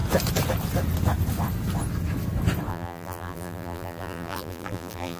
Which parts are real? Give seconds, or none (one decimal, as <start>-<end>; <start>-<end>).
0.0-2.7